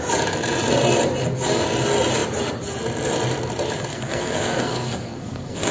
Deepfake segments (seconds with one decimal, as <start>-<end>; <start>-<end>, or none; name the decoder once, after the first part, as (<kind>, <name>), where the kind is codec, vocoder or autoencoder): 3.9-5.7 (codec, SNAC)